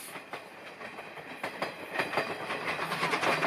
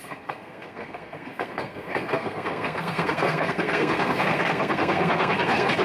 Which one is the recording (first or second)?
first